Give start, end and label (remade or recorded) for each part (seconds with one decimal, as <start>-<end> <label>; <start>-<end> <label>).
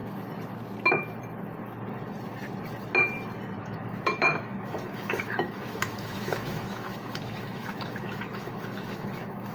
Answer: 0.0-3.6 recorded; 3.6-9.5 remade